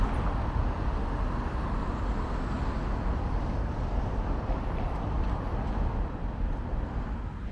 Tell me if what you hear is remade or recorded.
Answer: recorded